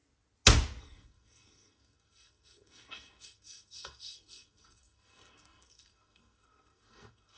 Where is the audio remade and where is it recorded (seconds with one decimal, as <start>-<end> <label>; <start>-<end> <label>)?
0.0-0.8 recorded; 0.8-7.4 remade